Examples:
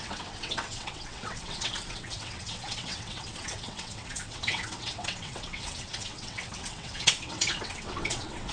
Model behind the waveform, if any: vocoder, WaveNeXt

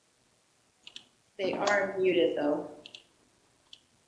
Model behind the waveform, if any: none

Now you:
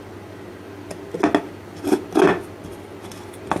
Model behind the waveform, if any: none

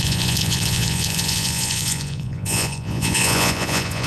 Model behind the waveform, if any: vocoder, Vocos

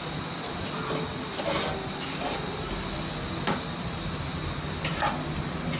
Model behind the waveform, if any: none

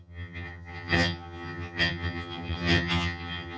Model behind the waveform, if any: vocoder, HiFi-GAN